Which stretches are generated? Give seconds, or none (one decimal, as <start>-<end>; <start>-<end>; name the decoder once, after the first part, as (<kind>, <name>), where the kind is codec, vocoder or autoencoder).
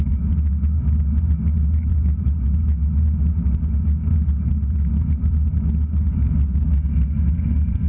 none